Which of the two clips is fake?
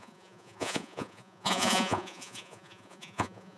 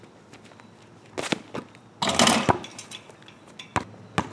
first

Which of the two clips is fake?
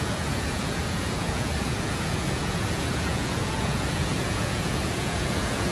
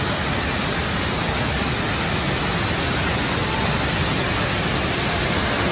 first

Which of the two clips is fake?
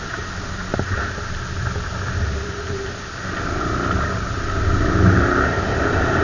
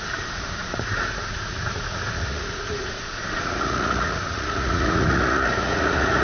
second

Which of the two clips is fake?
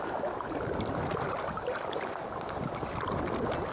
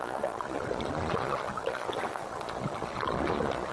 second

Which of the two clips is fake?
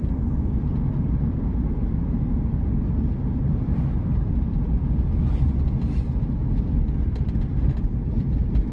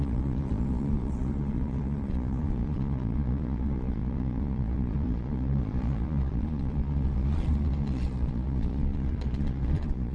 second